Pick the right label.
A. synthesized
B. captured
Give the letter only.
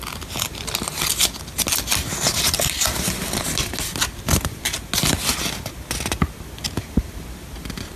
B